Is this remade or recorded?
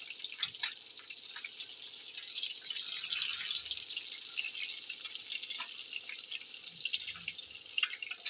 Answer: recorded